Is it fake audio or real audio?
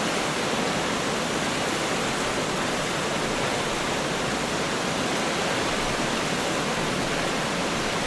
real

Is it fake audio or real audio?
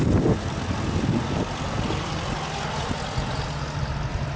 real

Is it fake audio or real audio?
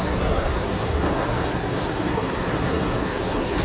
fake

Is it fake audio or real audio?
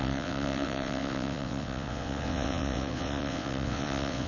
fake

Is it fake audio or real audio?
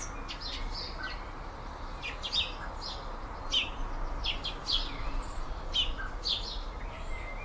real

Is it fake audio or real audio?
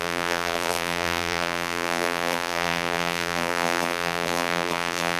fake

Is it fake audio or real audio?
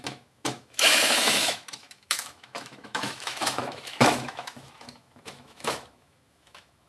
fake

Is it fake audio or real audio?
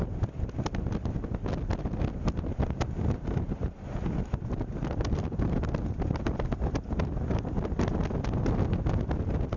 real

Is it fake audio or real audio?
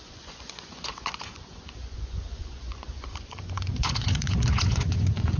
fake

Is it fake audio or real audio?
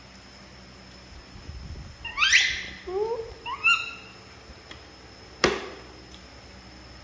real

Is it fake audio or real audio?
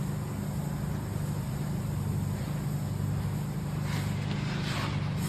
real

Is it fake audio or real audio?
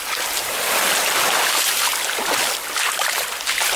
real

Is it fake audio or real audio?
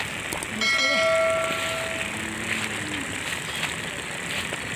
real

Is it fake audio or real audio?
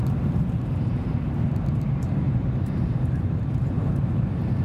fake